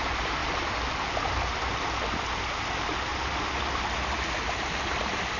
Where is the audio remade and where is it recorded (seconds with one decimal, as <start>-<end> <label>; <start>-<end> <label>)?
0.0-5.4 recorded